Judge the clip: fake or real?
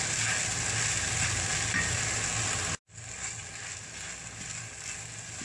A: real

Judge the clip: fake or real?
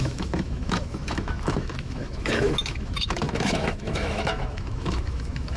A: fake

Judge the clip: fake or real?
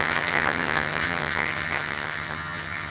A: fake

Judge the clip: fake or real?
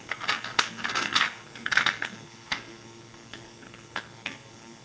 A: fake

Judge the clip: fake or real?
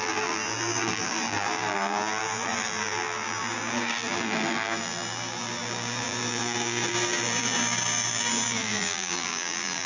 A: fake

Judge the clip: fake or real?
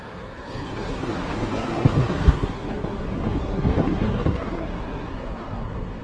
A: fake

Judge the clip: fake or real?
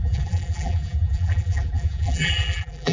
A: fake